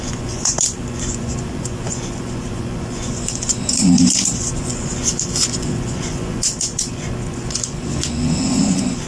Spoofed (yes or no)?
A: yes